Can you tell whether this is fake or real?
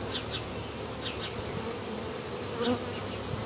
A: real